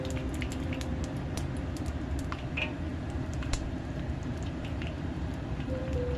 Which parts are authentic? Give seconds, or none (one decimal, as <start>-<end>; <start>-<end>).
0.0-2.9; 5.8-6.2